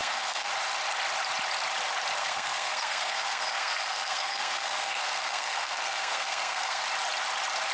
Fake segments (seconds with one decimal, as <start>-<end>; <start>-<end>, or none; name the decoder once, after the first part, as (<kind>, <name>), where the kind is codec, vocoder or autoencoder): 0.0-0.5 (codec, SNAC); 2.2-6.8